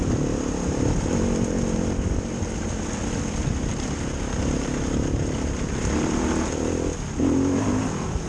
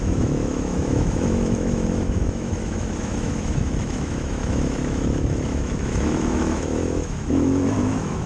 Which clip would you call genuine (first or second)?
first